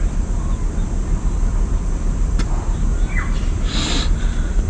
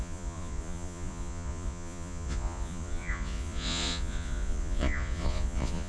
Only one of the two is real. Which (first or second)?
first